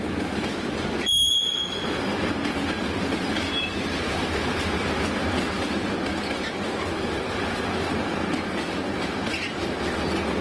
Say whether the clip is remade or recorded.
recorded